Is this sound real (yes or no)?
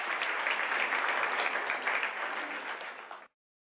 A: yes